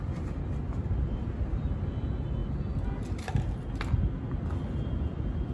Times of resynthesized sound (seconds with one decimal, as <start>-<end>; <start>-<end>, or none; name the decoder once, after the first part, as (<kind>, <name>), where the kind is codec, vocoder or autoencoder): none